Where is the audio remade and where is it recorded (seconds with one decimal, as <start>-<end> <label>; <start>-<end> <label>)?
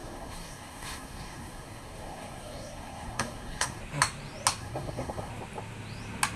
0.0-3.8 remade; 3.8-4.6 recorded; 4.6-5.3 remade; 5.3-6.4 recorded